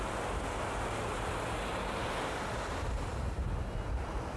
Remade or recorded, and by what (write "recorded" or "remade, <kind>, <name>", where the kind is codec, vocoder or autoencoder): recorded